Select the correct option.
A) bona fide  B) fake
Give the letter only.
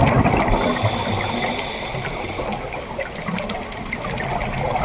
A